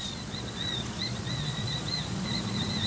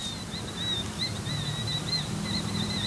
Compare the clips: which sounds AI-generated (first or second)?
first